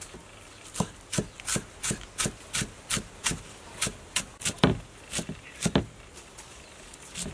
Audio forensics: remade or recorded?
recorded